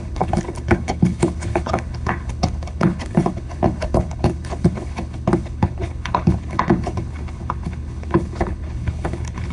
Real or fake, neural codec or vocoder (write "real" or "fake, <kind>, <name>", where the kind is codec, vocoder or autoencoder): fake, codec, HILCodec